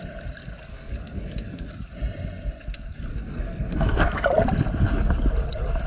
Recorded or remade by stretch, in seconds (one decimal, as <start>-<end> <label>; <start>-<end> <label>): 0.0-0.7 recorded; 0.7-1.7 remade; 1.7-3.1 recorded; 3.1-4.2 remade; 4.2-5.9 recorded